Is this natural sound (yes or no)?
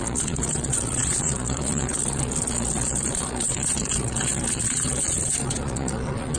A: no